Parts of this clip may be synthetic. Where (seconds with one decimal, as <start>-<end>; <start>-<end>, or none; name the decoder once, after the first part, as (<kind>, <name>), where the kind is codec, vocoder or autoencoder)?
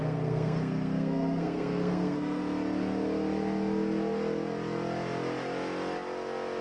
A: 0.0-2.4 (codec, SNAC)